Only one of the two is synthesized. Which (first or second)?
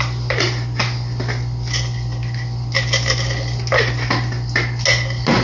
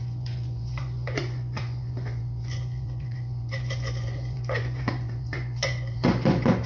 second